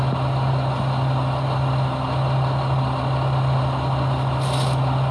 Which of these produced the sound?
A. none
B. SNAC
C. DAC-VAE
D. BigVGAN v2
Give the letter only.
A